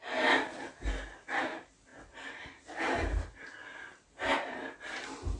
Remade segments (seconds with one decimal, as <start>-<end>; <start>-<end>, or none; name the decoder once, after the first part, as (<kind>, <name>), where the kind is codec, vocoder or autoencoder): none